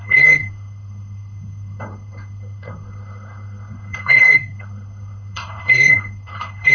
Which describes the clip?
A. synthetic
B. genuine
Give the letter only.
A